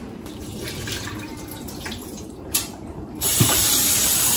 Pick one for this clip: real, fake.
fake